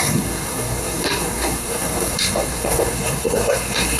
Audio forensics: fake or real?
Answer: fake